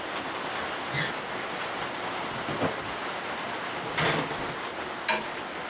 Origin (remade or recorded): recorded